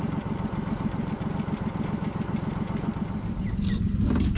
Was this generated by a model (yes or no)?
no